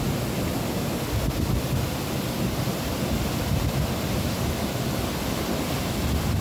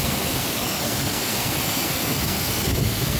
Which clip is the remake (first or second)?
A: second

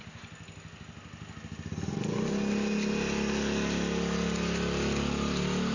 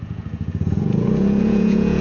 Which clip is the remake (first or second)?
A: second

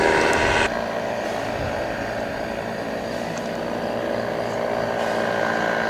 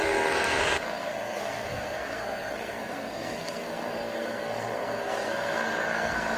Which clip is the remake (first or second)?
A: second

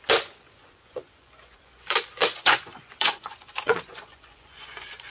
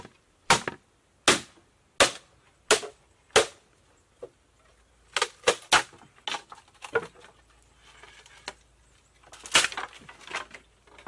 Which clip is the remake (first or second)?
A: first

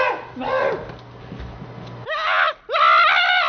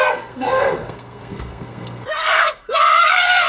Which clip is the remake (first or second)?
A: second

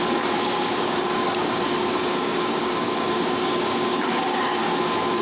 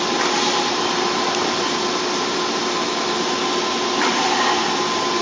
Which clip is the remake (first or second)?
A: first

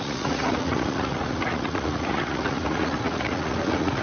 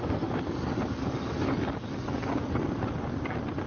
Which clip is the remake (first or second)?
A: first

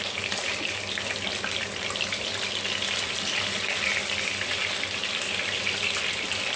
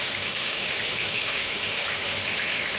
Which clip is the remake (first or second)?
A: second